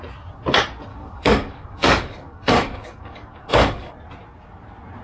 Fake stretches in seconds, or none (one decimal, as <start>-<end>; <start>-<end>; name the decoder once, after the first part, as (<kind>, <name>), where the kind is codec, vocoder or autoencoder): 0.9-3.9 (codec, DAC)